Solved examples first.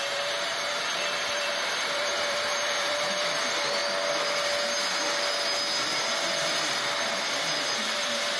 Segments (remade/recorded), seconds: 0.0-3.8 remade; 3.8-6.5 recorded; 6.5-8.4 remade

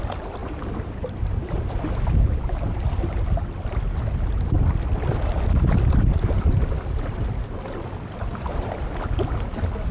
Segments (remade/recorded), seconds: 0.0-0.4 recorded; 0.4-1.7 remade; 1.7-9.9 recorded